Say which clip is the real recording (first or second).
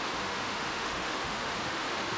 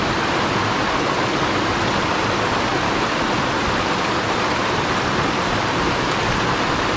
second